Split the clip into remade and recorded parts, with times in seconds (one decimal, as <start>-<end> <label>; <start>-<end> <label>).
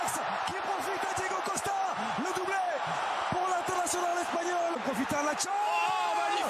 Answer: 0.0-6.5 recorded